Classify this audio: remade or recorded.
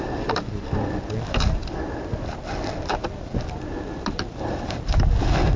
recorded